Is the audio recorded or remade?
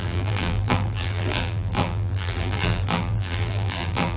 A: remade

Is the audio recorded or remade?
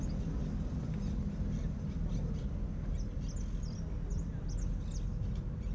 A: recorded